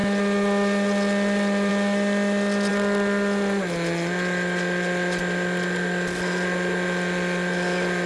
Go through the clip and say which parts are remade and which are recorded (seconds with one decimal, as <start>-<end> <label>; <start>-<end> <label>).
0.0-8.1 recorded